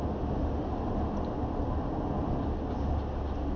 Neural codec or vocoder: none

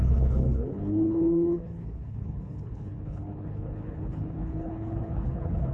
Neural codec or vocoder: codec, HILCodec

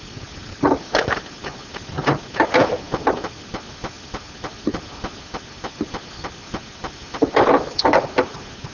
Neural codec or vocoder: none